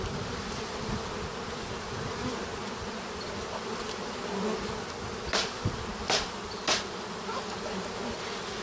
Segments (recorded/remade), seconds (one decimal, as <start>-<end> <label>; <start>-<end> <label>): 0.0-8.6 recorded